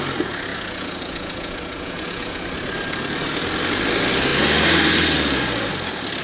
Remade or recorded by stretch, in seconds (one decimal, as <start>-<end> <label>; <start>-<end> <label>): 0.0-0.5 recorded; 0.5-2.4 remade; 2.4-6.2 recorded